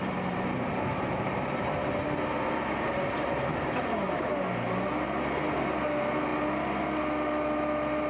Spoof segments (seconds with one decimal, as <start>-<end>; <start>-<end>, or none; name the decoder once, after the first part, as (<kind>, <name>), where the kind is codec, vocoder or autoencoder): 0.0-4.3 (vocoder, BigVGAN v2)